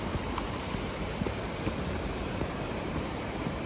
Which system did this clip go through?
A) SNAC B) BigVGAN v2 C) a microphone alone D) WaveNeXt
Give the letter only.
B